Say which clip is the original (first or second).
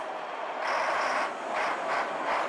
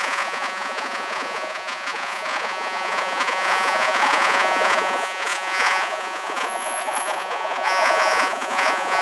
first